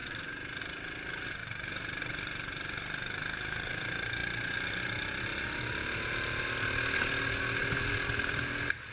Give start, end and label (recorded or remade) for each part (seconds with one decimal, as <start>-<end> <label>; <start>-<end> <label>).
0.0-0.6 remade; 0.6-1.4 recorded; 1.4-2.0 remade; 2.0-8.9 recorded